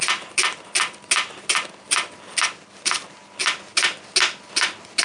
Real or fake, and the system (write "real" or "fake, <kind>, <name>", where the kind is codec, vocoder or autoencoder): real